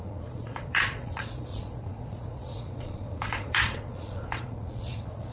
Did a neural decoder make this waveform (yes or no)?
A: yes